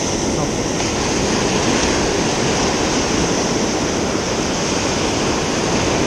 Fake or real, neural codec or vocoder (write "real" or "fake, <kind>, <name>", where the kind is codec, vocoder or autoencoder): real